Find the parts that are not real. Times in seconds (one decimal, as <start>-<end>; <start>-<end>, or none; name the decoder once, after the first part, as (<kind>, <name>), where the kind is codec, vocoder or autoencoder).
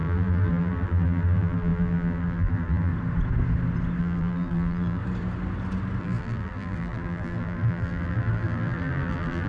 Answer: 0.0-2.9 (vocoder, BigVGAN v2); 4.0-5.0; 6.0-9.5